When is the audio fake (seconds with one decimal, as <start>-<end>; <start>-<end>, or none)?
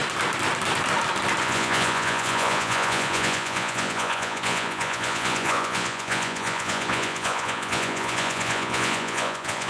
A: 1.4-9.7